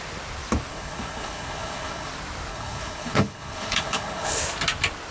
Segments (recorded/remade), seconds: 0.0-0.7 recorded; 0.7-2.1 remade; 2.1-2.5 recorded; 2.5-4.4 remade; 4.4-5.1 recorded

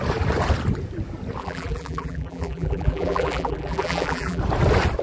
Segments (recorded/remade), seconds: 0.0-1.4 recorded; 1.4-4.4 remade; 4.4-5.0 recorded

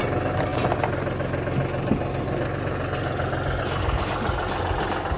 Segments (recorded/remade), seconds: 0.0-5.2 recorded